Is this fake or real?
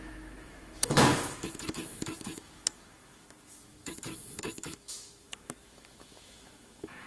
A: fake